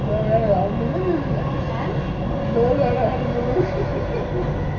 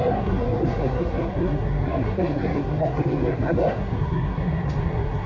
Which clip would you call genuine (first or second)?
first